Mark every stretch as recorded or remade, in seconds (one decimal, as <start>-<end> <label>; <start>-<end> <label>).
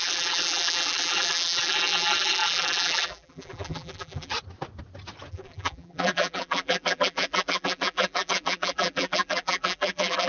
0.0-4.3 remade; 4.3-5.3 recorded; 5.3-10.3 remade